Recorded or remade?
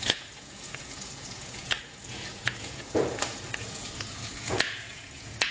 remade